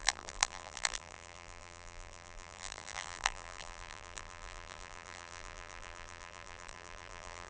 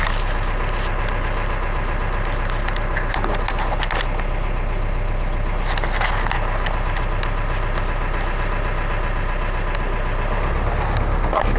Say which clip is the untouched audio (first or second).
second